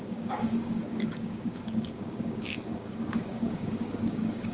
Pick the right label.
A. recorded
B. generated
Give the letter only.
B